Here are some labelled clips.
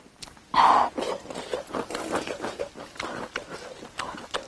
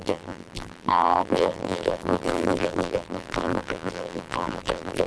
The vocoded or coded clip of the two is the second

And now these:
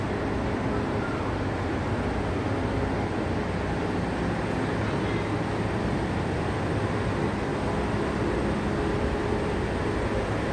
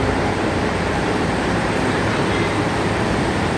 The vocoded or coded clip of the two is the second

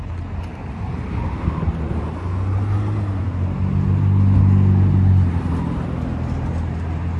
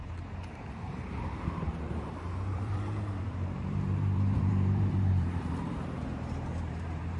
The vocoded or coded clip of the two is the second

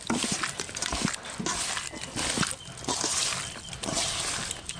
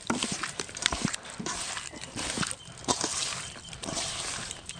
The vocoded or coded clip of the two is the second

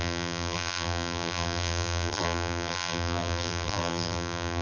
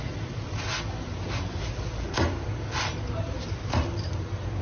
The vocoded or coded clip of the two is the first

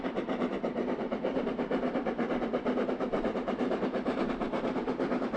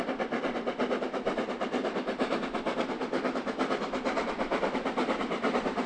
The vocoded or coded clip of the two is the first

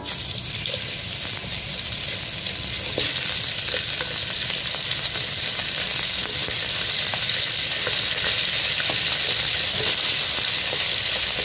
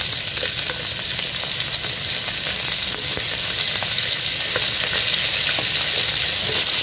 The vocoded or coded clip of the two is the first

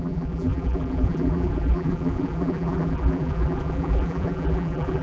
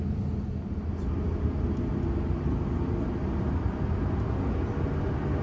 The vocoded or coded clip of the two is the first